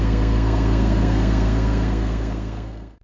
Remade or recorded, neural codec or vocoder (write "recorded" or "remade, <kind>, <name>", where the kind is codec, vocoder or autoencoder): remade, codec, SNAC